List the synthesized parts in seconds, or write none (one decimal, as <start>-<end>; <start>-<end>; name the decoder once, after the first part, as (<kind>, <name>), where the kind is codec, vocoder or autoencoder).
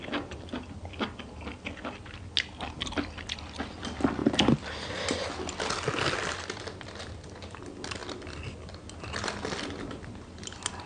none